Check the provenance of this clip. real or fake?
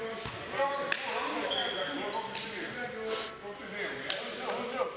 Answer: real